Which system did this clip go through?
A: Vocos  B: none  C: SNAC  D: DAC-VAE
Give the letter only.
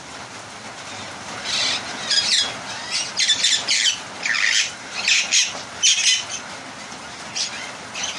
B